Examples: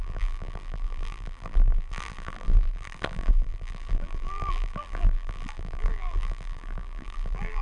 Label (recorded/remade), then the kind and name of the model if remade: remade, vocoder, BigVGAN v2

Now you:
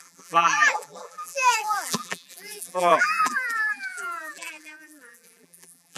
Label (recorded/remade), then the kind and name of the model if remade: remade, vocoder, BigVGAN v2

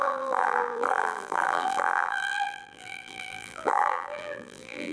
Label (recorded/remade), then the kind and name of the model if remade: remade, vocoder, BigVGAN v2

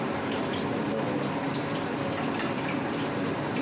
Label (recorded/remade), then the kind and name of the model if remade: remade, vocoder, BigVGAN v2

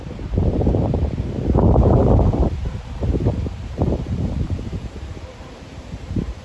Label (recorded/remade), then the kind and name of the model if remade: remade, vocoder, BigVGAN v2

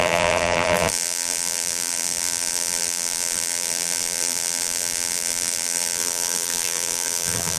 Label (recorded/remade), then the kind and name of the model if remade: remade, vocoder, BigVGAN v2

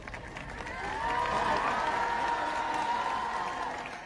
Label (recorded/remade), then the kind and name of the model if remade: recorded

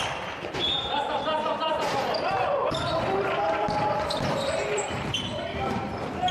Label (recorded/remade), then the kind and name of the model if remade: remade, vocoder, BigVGAN v2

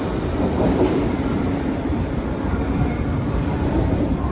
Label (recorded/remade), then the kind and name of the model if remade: remade, vocoder, BigVGAN v2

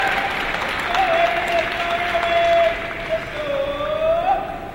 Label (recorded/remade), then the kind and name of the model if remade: recorded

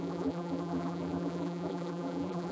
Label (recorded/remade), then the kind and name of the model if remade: remade, vocoder, BigVGAN v2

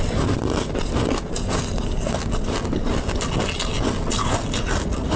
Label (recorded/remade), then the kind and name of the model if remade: recorded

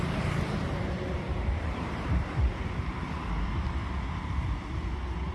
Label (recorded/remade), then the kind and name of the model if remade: remade, vocoder, BigVGAN v2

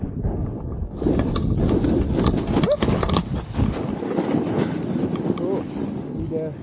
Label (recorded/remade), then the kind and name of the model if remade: recorded